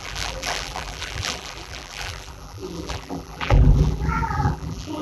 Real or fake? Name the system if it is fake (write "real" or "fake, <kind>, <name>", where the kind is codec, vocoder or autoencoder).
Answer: fake, vocoder, BigVGAN v2